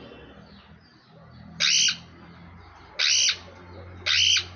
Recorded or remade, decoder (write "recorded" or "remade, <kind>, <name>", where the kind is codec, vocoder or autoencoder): recorded